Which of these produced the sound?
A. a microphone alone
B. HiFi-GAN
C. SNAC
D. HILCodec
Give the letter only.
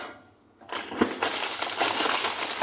A